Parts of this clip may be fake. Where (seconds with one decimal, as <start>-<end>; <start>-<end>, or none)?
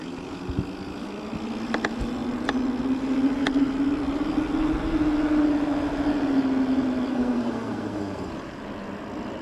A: 7.1-8.3